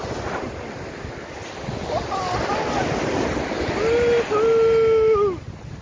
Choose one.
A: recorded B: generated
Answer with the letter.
A